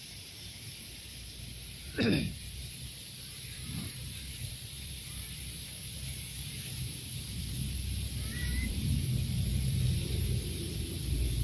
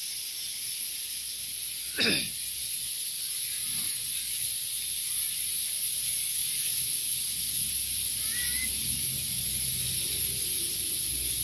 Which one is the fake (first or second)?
first